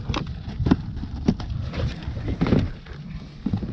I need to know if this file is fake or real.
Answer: real